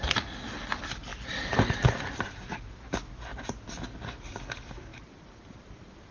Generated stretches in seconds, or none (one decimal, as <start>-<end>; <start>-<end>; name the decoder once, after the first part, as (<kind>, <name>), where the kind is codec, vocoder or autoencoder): 1.1-2.5 (vocoder, BigVGAN v2)

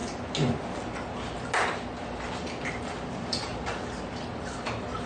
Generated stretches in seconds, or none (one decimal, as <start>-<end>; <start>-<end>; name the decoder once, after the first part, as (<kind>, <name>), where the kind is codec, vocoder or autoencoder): 3.1-3.7 (vocoder, BigVGAN v2); 4.4-5.1

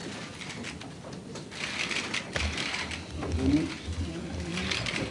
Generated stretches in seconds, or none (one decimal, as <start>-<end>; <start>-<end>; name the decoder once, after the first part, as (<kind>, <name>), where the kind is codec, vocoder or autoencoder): none

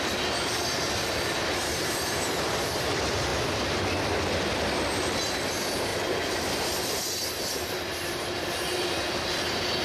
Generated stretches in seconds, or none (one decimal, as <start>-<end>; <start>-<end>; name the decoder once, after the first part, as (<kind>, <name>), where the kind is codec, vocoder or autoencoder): 1.6-2.9 (vocoder, BigVGAN v2)

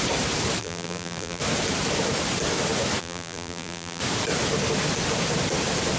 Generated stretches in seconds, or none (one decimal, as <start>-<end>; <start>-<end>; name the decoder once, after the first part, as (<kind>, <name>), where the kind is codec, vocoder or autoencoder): 0.6-1.4 (vocoder, BigVGAN v2); 3.0-4.0